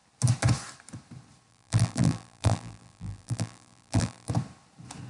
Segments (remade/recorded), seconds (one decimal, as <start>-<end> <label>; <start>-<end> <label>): 0.0-1.5 recorded; 1.5-4.3 remade; 4.3-5.1 recorded